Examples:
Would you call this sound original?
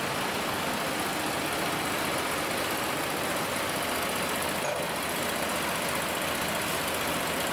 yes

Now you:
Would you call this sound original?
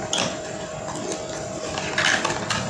yes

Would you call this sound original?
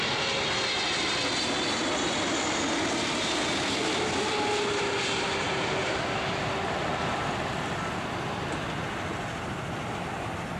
yes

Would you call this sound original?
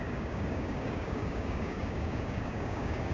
no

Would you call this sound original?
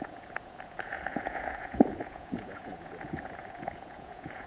no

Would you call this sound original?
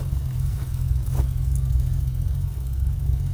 no